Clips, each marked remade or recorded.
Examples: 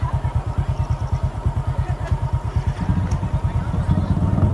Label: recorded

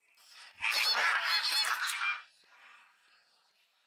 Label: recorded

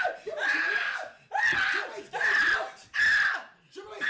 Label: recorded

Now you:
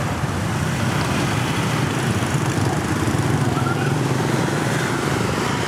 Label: remade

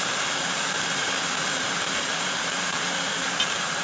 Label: remade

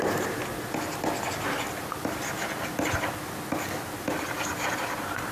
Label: recorded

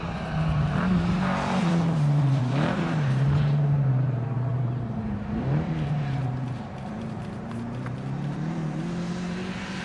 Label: remade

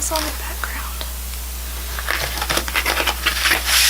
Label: recorded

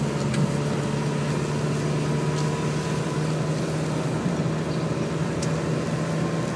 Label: recorded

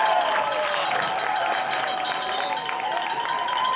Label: remade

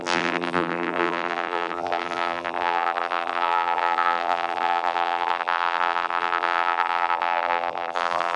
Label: remade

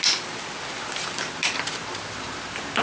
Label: recorded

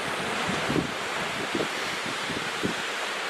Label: remade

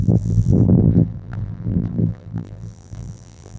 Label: remade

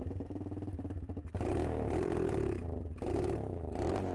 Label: remade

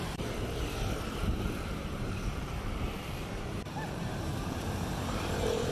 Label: remade